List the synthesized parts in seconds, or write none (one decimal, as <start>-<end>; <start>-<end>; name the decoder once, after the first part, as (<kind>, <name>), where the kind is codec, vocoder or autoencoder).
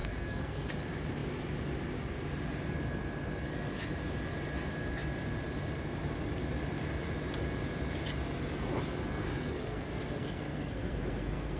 0.0-0.7 (codec, SNAC); 9.2-11.6